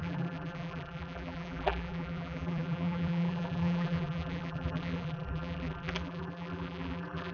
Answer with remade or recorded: remade